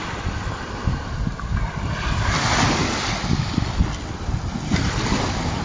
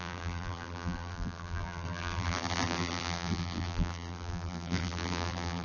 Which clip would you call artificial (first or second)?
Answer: second